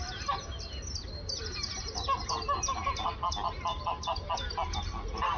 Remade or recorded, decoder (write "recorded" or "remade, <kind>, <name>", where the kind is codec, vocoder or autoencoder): recorded